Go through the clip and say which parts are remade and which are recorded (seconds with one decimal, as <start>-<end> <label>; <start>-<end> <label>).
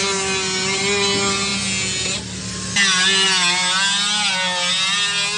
0.0-5.4 recorded